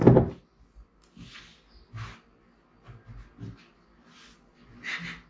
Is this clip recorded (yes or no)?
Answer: yes